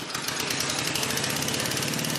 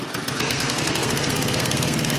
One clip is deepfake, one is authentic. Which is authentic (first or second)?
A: first